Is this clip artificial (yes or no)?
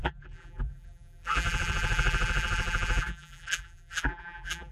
yes